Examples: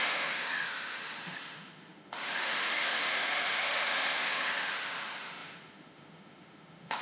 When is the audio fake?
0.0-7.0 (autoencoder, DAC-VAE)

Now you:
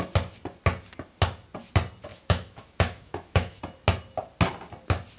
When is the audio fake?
2.1-3.6 (autoencoder, DAC-VAE)

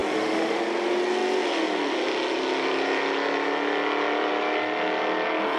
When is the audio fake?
0.0-0.6 (autoencoder, DAC-VAE)

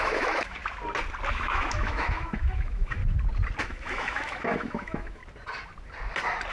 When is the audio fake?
0.0-0.6 (autoencoder, DAC-VAE); 1.3-3.0; 3.6-5.2